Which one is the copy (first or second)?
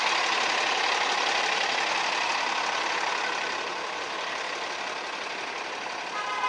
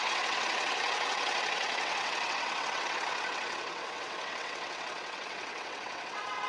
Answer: second